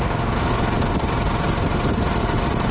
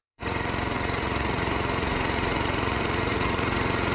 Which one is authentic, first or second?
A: first